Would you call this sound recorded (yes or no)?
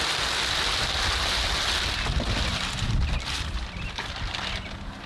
yes